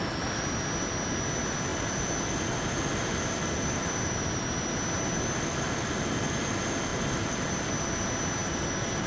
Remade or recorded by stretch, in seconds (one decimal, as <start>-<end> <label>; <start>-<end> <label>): 0.0-1.7 recorded; 1.7-4.4 remade; 4.4-6.9 recorded; 6.9-7.7 remade; 7.7-9.1 recorded